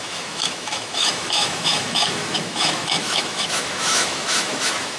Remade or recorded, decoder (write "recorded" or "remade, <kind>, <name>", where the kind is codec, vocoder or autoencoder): remade, autoencoder, DAC-VAE